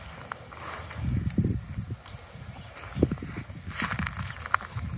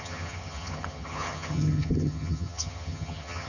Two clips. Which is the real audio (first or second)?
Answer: first